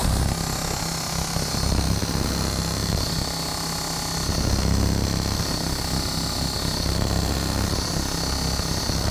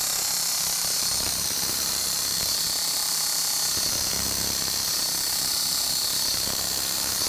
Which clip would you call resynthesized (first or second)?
second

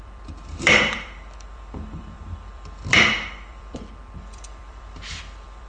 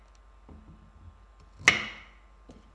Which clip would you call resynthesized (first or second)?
first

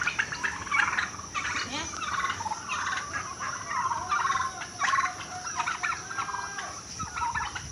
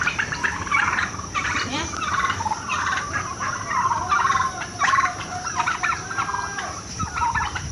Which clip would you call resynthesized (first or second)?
second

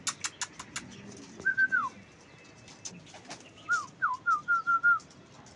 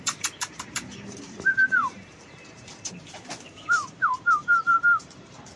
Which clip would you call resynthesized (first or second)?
second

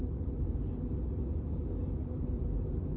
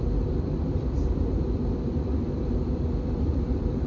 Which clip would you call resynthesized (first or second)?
second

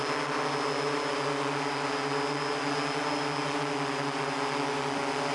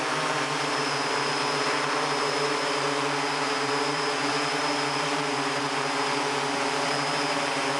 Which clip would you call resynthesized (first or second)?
second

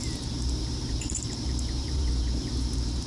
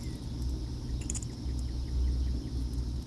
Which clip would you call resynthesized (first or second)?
first